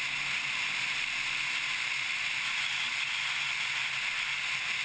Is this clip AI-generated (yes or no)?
no